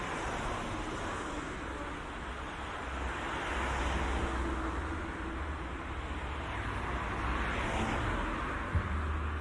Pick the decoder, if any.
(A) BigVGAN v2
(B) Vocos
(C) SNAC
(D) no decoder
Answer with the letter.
D